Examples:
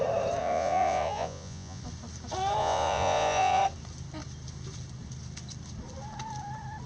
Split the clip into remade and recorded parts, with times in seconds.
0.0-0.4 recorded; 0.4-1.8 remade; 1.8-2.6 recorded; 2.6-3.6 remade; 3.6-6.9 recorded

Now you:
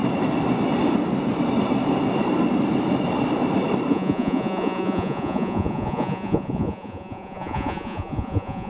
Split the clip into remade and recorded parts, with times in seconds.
0.0-3.9 recorded; 3.9-8.7 remade